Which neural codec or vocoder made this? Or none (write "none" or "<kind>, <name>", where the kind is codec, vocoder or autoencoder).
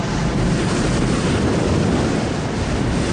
none